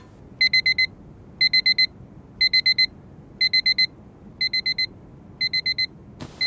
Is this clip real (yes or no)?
yes